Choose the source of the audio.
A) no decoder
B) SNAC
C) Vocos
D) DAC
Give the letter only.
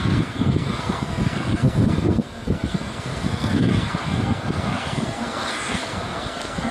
B